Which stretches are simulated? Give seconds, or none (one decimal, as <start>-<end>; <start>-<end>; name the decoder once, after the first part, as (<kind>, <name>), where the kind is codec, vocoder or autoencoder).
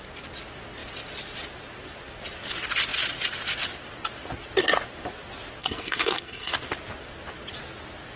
5.6-6.5 (codec, SNAC)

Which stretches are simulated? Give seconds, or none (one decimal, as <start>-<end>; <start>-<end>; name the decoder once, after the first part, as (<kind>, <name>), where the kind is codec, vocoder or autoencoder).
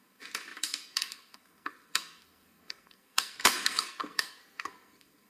0.0-5.3 (codec, SNAC)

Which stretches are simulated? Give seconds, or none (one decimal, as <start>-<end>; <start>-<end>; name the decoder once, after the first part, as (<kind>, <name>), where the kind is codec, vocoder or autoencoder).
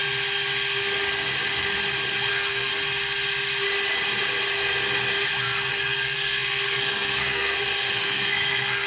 2.3-2.7 (codec, SNAC); 5.7-8.9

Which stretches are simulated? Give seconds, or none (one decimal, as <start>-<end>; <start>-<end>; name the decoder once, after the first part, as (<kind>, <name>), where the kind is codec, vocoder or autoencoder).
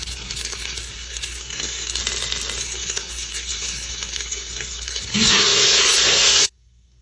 0.0-2.0 (codec, SNAC); 2.6-7.0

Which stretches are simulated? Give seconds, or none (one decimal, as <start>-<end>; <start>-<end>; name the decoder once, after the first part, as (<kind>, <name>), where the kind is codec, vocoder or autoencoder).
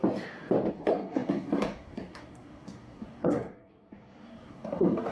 0.7-5.1 (codec, SNAC)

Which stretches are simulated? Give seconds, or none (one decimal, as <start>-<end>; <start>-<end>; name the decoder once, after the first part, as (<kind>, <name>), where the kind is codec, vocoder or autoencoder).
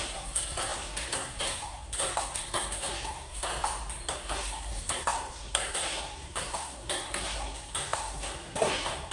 0.0-3.5 (codec, SNAC); 4.1-9.1